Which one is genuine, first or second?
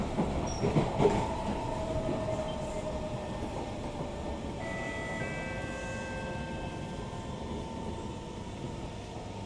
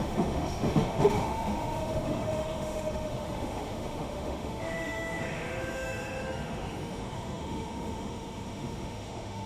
first